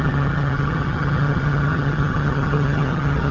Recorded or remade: remade